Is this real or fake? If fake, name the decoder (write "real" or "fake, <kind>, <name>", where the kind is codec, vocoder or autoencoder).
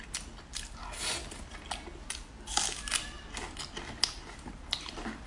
real